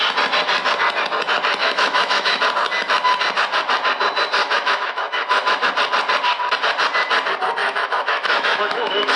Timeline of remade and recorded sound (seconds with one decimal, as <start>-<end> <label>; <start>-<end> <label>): 0.0-1.6 recorded; 1.6-2.4 remade; 2.4-4.4 recorded; 4.4-5.7 remade; 5.7-7.6 recorded; 7.6-9.2 remade